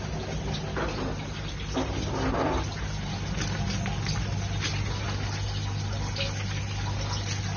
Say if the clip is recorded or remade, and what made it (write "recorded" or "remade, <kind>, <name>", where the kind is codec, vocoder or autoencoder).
recorded